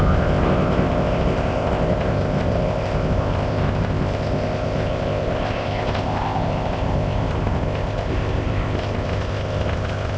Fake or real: fake